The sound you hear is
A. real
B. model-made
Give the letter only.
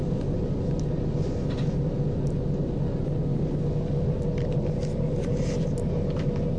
A